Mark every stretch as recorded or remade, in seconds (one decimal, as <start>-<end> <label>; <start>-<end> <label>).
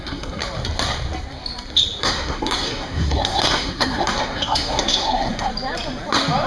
0.0-0.4 remade; 0.4-2.0 recorded; 2.0-5.5 remade; 5.5-6.5 recorded